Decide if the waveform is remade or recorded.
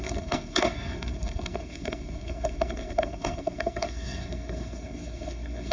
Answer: remade